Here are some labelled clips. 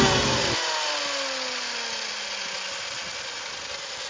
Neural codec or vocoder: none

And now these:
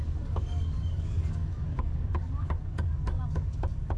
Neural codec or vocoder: codec, DAC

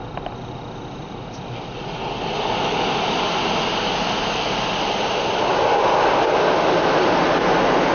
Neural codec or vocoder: none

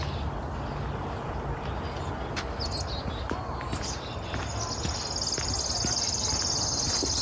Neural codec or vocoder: none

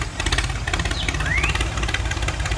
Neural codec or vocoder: none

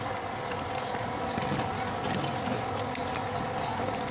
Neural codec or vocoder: none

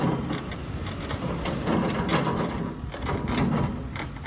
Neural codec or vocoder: none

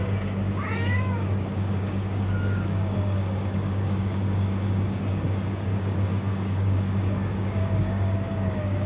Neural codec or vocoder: codec, DAC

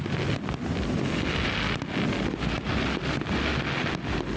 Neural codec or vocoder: none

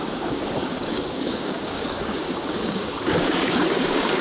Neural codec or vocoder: codec, DAC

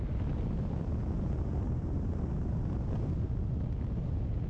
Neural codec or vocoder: none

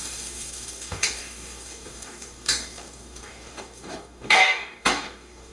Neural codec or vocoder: codec, DAC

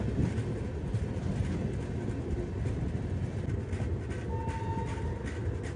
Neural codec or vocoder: none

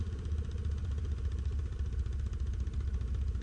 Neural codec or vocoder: none